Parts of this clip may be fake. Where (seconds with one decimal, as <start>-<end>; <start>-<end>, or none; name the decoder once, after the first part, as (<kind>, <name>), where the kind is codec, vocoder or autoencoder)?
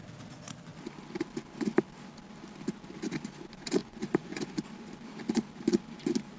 3.8-4.6 (vocoder, Vocos)